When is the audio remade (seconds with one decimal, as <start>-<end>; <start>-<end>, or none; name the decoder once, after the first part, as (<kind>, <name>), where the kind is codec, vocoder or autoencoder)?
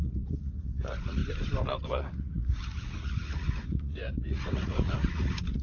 0.0-1.2 (vocoder, Vocos); 1.9-5.6